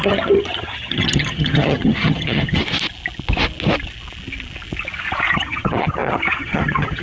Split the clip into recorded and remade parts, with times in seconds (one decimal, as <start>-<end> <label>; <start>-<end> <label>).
0.0-2.6 remade; 2.6-5.3 recorded; 5.3-7.0 remade